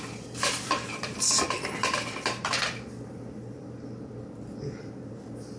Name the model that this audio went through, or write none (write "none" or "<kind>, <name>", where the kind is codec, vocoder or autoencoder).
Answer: vocoder, BigVGAN v2